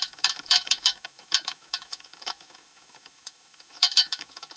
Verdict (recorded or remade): remade